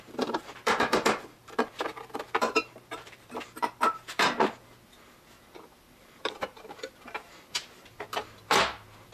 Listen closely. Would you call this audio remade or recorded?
remade